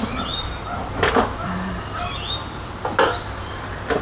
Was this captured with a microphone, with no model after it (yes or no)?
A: yes